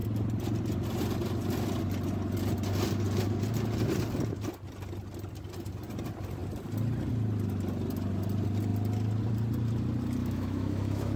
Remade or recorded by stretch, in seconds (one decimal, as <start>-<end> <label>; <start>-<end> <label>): 0.0-10.2 recorded; 10.2-11.2 remade